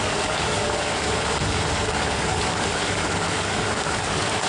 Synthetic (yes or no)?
yes